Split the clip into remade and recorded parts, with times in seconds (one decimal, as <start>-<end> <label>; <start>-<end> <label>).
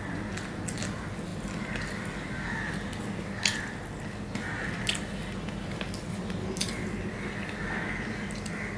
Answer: 0.0-8.8 recorded